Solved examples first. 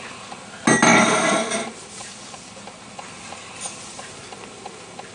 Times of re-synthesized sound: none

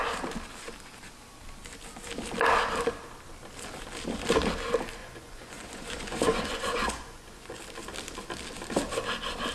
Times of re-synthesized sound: 5.0-7.6

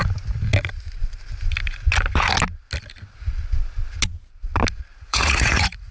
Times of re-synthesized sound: 4.9-5.9

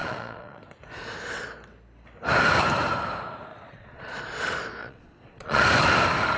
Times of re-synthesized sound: 0.0-0.6; 3.5-4.2; 4.8-5.6

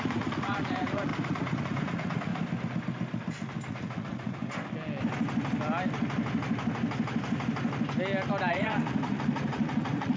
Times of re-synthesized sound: 0.0-2.3; 3.7-4.4; 8.5-10.2

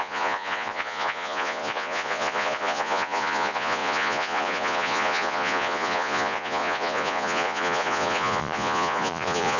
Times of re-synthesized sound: 0.0-9.6